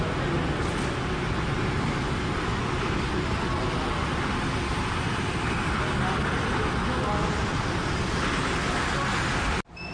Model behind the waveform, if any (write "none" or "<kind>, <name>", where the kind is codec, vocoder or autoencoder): none